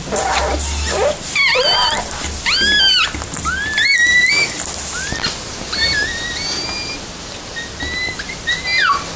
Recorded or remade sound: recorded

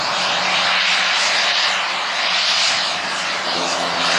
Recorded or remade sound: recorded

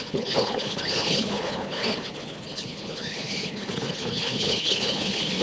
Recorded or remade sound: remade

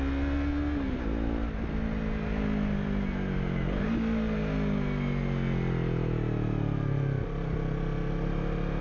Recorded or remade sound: recorded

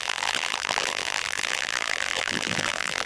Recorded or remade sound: remade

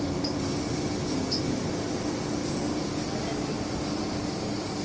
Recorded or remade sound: recorded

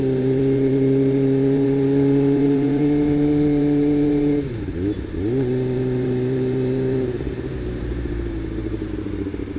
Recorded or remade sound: remade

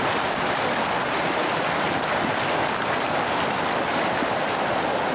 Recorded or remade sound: recorded